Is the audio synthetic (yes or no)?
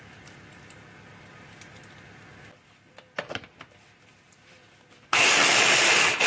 no